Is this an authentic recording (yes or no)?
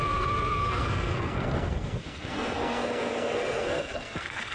no